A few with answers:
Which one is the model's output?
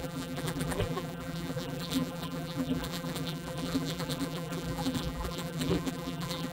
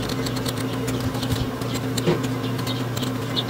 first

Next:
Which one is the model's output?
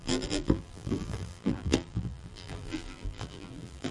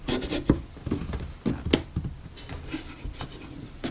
first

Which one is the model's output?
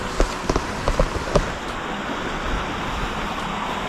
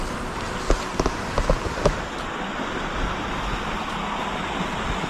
first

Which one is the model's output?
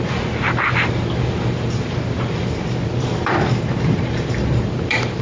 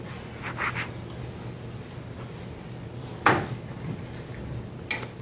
first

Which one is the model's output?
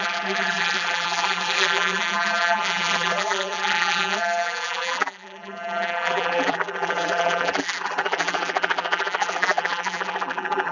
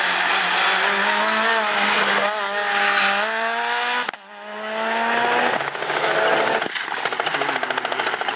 first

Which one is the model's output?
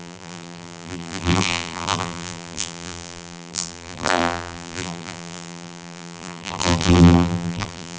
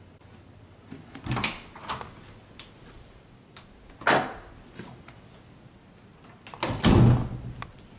first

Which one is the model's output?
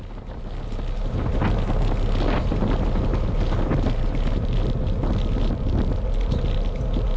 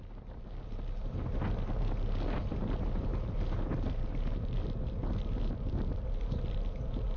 second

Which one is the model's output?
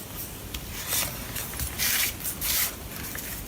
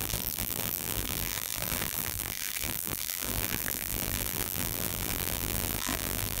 second